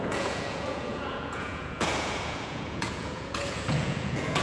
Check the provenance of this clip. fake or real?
fake